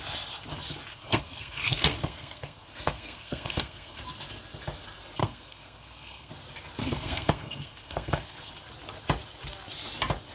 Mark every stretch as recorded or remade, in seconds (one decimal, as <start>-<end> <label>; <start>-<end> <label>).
0.0-0.9 recorded; 0.9-4.0 remade; 4.0-5.2 recorded; 5.2-6.3 remade; 6.3-6.8 recorded; 6.8-8.5 remade; 8.5-10.3 recorded